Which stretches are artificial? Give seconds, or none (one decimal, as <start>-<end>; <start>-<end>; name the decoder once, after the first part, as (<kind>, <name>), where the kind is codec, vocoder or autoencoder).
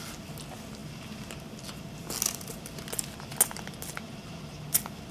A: none